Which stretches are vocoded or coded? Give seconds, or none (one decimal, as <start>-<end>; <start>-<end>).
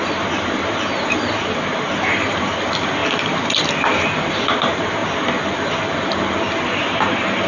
none